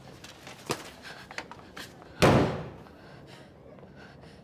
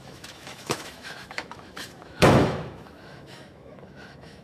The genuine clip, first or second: first